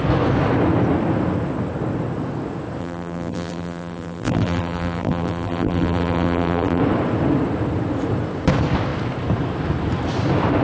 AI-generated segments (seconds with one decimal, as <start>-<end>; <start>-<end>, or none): 2.8-6.8